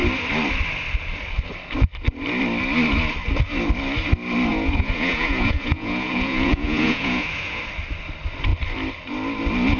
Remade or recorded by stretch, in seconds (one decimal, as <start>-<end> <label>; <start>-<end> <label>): 0.0-4.5 recorded; 4.5-7.6 remade; 7.6-9.8 recorded

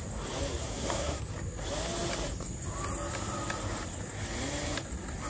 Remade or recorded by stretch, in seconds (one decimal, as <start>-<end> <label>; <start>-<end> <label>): 0.0-0.6 recorded; 0.6-1.2 remade; 1.2-5.3 recorded

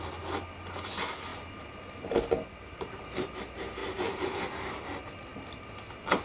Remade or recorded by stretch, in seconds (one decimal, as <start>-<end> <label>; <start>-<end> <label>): 0.0-6.2 recorded